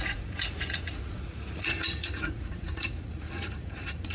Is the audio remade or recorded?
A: remade